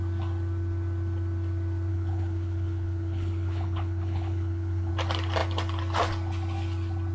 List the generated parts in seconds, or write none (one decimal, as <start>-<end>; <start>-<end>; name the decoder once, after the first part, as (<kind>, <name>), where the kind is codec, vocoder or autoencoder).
1.9-4.9 (codec, HILCodec)